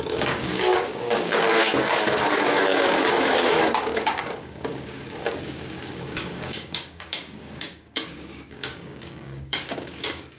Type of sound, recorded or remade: remade